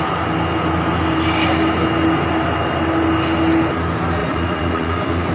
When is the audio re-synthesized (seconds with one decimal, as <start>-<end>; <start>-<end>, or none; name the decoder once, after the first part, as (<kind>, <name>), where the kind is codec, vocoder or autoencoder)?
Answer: 4.2-5.3 (vocoder, Vocos)